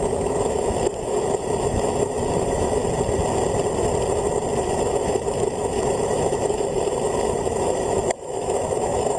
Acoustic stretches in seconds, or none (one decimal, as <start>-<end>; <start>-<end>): 2.8-4.7

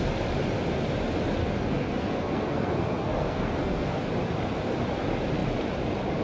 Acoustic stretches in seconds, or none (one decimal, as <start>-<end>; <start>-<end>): 0.0-1.4; 4.0-6.2

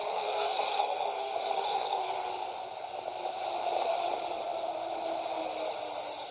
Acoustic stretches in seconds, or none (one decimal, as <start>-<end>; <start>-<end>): 2.3-6.3

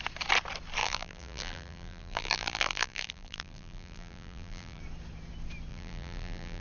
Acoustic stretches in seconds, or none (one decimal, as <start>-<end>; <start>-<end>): 0.0-0.8; 4.8-5.7

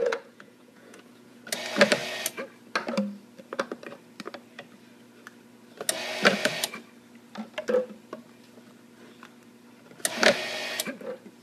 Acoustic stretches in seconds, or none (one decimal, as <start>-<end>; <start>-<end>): 1.4-11.4

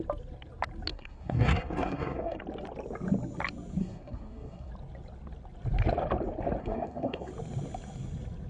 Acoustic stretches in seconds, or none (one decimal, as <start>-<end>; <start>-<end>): 0.0-0.9; 2.4-3.8; 4.7-6.6; 7.3-8.5

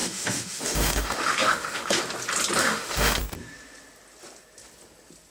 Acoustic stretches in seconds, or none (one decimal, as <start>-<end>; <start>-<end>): 2.0-2.6; 3.2-5.3

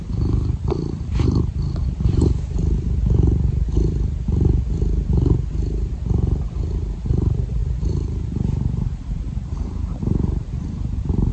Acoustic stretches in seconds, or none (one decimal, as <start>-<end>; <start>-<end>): 2.6-7.1